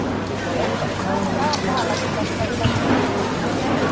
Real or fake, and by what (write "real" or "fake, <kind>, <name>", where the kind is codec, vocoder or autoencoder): real